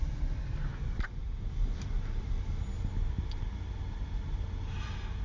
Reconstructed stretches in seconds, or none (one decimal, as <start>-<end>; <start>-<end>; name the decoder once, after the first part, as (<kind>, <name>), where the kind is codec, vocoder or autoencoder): none